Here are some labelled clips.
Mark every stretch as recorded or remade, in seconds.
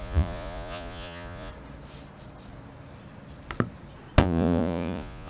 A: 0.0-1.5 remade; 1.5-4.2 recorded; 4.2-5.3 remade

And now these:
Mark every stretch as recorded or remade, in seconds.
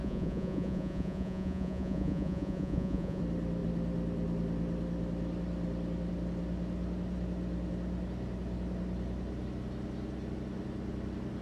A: 0.0-3.2 remade; 3.2-11.4 recorded